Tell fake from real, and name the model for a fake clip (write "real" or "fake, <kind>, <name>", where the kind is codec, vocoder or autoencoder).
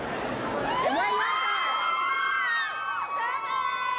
real